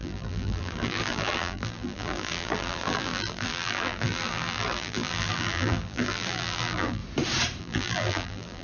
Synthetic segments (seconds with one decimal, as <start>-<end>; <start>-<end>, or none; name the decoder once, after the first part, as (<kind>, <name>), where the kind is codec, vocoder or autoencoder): 0.0-7.0 (vocoder, BigVGAN v2); 7.6-8.6